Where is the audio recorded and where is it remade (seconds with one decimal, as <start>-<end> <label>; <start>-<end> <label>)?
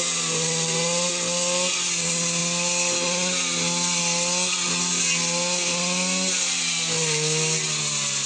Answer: 0.0-8.3 recorded